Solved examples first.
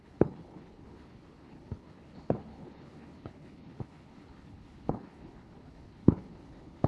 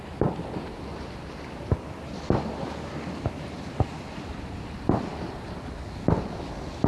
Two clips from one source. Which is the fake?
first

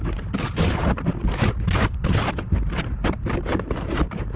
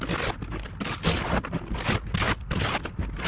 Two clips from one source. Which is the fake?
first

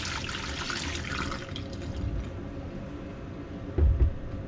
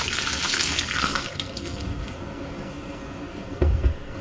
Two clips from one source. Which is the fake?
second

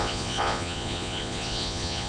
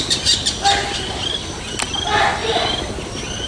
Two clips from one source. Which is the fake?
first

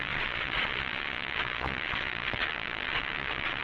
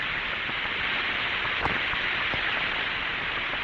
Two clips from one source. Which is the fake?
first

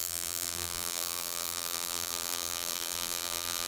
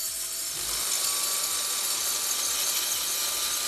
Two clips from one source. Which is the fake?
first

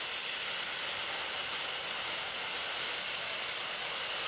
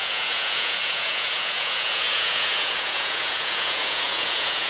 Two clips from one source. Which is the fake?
second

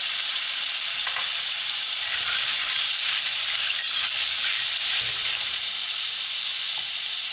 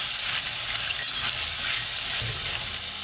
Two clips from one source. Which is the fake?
first